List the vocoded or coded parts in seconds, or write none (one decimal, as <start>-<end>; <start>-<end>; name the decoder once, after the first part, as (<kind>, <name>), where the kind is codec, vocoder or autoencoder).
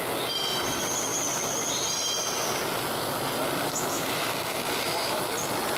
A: 3.9-5.2 (autoencoder, DAC-VAE)